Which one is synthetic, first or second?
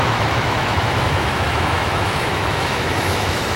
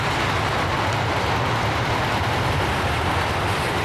first